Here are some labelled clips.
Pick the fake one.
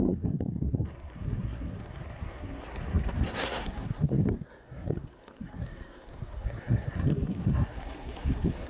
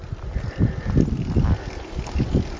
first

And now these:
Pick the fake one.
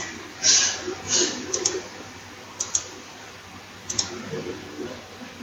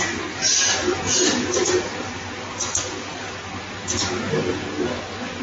first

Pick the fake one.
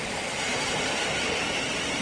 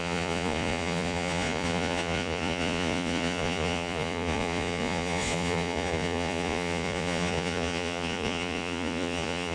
second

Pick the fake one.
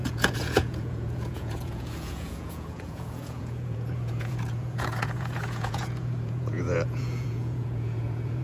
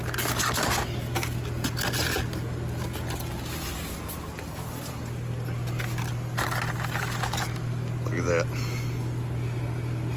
first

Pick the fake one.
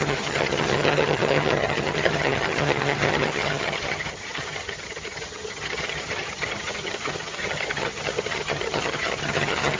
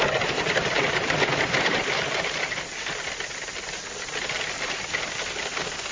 first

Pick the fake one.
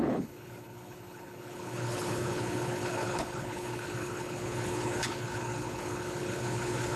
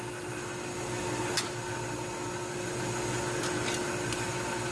first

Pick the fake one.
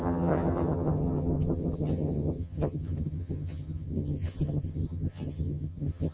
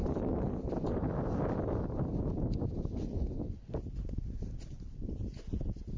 first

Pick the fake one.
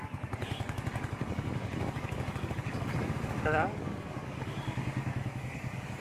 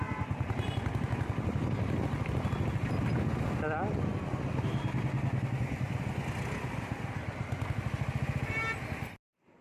first